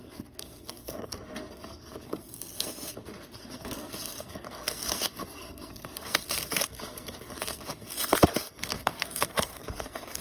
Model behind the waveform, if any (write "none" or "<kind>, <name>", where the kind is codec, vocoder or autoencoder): codec, SNAC